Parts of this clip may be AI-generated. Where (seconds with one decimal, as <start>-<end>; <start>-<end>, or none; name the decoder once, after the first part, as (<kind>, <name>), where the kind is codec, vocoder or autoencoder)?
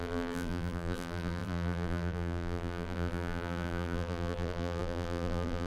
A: 0.0-5.7 (vocoder, BigVGAN v2)